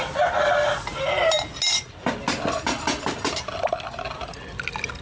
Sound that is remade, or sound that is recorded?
recorded